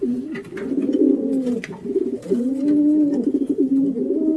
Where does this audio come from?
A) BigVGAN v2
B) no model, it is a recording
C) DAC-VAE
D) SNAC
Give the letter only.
B